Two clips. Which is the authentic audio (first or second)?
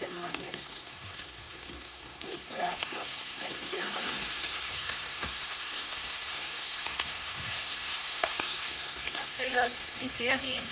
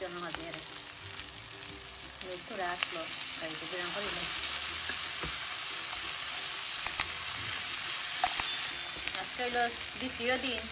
second